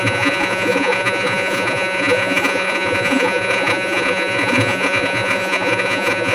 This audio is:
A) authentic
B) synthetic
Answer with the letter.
B